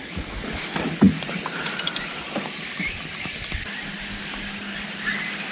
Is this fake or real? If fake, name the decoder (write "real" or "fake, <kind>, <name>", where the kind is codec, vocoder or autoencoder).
real